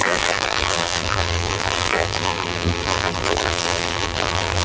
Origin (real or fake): fake